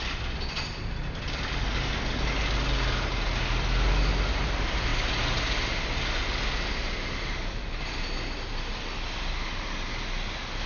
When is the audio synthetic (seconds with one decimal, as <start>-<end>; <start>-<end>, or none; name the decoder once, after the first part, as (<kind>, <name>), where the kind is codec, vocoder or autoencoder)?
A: none